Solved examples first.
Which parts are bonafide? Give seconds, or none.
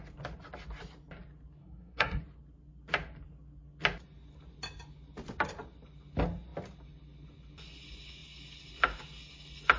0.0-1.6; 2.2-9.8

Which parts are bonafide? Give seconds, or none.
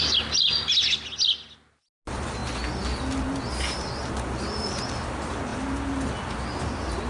0.0-7.1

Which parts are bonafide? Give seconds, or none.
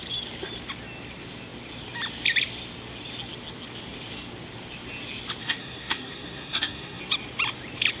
0.0-5.4; 7.0-8.0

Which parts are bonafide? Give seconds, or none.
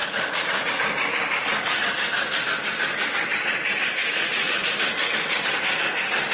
0.7-1.4; 1.9-4.0; 4.5-6.3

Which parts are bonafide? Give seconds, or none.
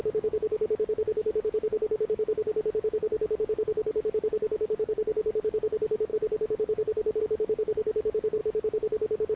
8.4-9.4